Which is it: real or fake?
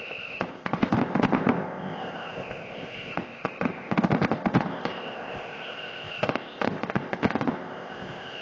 fake